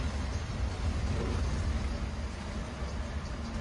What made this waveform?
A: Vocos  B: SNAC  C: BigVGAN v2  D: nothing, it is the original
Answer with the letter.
D